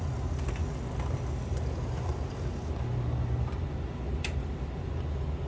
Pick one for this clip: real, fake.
real